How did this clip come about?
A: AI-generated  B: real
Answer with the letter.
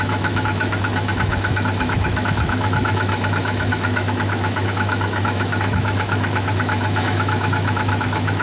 A